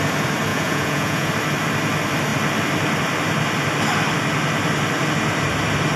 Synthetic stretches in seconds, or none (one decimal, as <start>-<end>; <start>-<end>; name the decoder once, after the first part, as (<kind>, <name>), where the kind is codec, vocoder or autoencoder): 0.5-1.3 (vocoder, Vocos)